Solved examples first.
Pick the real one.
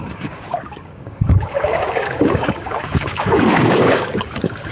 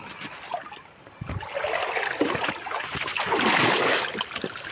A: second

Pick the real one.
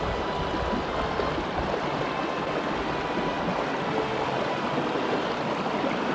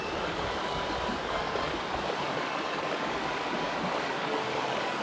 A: first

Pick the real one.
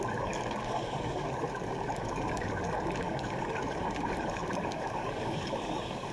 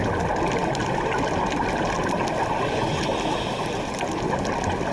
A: second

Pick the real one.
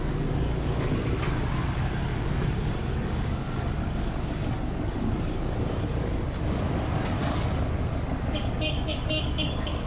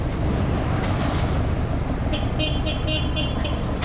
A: second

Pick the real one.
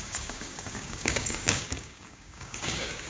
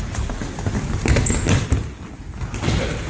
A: second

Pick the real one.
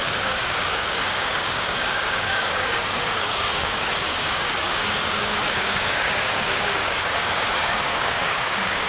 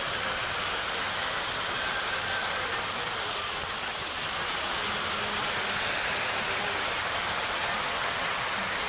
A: second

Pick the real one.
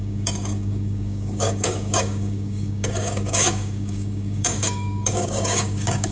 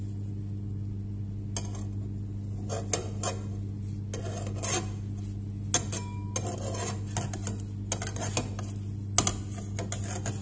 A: second